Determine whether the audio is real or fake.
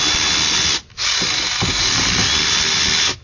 real